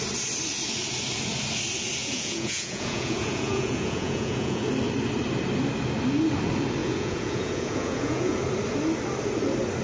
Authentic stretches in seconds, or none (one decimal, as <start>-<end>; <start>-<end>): 0.0-2.0; 4.7-6.8; 8.4-9.8